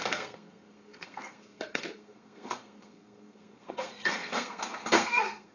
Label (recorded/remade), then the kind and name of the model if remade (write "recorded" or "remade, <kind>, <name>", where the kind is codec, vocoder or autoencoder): remade, codec, SNAC